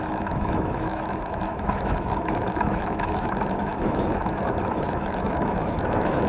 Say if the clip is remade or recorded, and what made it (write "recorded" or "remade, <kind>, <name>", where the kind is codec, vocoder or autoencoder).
remade, autoencoder, DAC-VAE